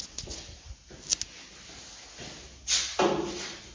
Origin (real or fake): real